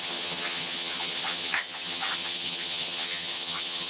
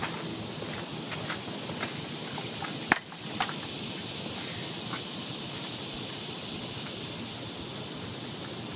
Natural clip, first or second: second